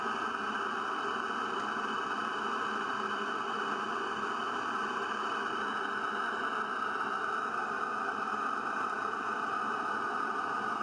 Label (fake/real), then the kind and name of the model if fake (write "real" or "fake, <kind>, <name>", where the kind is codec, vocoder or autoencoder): real